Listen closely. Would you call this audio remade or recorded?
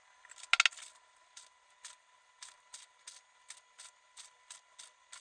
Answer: recorded